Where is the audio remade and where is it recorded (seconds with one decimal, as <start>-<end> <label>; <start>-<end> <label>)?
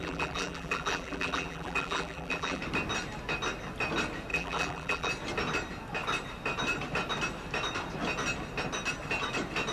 0.0-2.6 remade; 2.6-4.3 recorded; 4.3-5.1 remade; 5.1-9.7 recorded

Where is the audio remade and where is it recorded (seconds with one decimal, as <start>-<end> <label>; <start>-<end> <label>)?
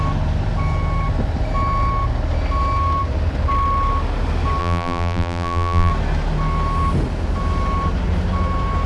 0.0-4.6 recorded; 4.6-5.9 remade; 5.9-8.9 recorded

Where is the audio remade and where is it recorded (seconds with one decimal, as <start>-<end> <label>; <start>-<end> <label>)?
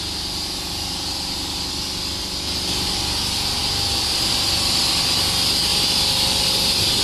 0.0-3.6 recorded; 3.6-4.8 remade; 4.8-5.7 recorded; 5.7-6.4 remade; 6.4-7.0 recorded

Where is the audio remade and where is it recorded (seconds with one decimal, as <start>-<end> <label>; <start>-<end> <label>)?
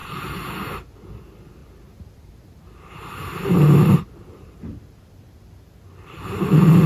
0.0-0.5 remade; 0.5-6.9 recorded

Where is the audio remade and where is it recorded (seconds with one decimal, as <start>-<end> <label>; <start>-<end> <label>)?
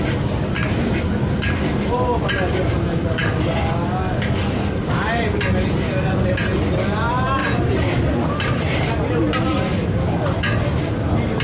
0.0-7.4 recorded; 7.4-8.9 remade; 8.9-11.4 recorded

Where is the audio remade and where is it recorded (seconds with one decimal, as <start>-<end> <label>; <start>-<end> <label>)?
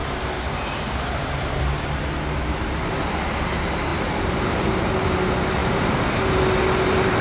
0.0-1.6 remade; 1.6-3.9 recorded; 3.9-4.9 remade; 4.9-5.6 recorded; 5.6-6.4 remade; 6.4-7.2 recorded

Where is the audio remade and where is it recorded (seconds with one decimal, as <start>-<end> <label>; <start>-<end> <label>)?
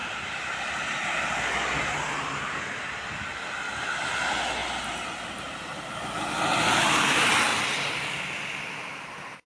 0.0-1.4 remade; 1.4-7.5 recorded; 7.5-8.1 remade; 8.1-9.5 recorded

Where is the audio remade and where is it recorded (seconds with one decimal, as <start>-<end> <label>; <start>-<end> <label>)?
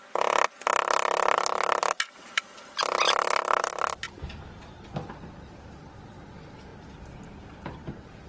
0.0-0.7 recorded; 0.7-5.1 remade; 5.1-6.7 recorded; 6.7-7.9 remade; 7.9-8.3 recorded